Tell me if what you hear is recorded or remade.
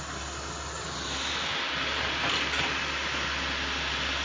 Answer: recorded